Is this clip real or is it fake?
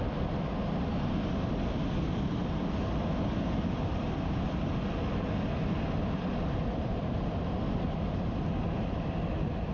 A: real